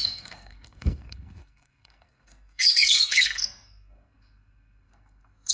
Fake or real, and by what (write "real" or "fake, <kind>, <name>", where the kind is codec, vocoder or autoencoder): fake, codec, SNAC